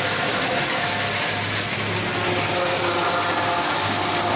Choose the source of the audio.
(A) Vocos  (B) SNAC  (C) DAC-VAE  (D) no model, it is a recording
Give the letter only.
D